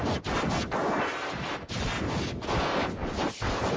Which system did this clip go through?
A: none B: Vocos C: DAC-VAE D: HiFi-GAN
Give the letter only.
A